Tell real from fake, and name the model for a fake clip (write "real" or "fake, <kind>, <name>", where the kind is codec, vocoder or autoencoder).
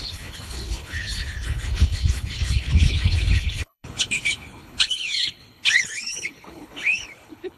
fake, codec, HILCodec